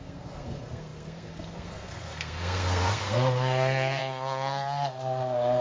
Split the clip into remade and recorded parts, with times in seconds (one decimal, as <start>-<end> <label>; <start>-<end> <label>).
0.0-5.6 remade